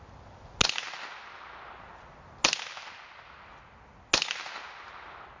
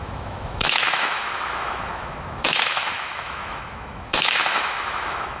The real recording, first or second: first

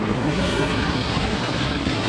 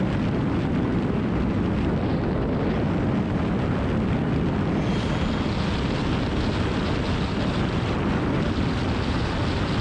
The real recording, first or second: second